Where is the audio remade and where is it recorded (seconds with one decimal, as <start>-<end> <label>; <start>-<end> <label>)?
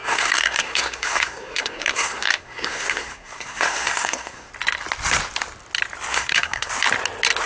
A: 0.0-4.5 remade; 4.5-6.1 recorded; 6.1-6.7 remade; 6.7-7.5 recorded